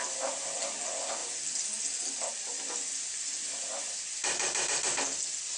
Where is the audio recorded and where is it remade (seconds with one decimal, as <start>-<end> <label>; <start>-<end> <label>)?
0.0-5.6 recorded